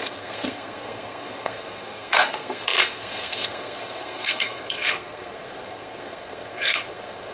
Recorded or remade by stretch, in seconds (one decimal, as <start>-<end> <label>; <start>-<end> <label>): 0.0-7.3 remade